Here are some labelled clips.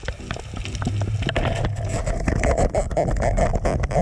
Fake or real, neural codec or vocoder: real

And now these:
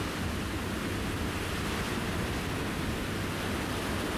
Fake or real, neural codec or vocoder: real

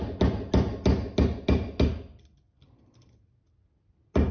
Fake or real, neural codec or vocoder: real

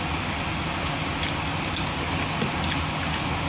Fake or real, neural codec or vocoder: real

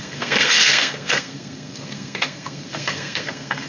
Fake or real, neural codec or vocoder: fake, codec, SNAC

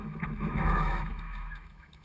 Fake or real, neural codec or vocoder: fake, autoencoder, DAC-VAE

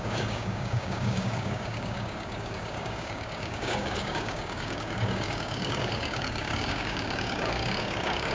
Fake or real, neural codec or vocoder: fake, codec, DAC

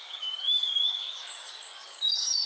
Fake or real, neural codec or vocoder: fake, codec, DAC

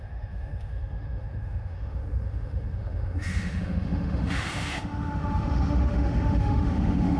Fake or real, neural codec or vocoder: fake, autoencoder, DAC-VAE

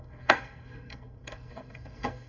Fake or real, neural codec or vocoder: fake, codec, SNAC